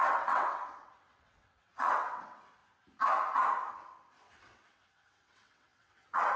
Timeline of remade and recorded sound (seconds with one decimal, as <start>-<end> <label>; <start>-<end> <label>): 0.0-2.6 remade; 2.6-3.7 recorded; 3.7-6.4 remade